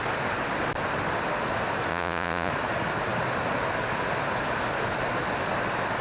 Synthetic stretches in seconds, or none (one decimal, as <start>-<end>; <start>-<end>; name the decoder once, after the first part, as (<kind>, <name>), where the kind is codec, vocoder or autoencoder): 1.9-2.5 (vocoder, Vocos)